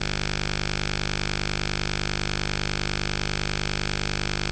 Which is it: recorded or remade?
recorded